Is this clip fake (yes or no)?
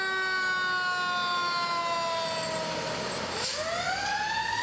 no